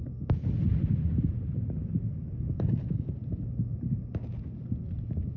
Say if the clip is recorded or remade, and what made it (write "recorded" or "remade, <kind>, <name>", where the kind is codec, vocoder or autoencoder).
recorded